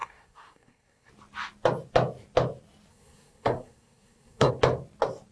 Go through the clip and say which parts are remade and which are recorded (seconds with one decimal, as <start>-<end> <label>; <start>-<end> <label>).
0.0-1.1 remade; 1.1-2.9 recorded; 2.9-4.5 remade; 4.5-5.3 recorded